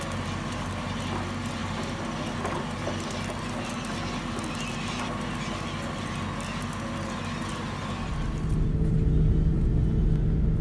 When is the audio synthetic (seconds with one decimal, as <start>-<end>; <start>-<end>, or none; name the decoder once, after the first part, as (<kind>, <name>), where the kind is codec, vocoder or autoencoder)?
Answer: none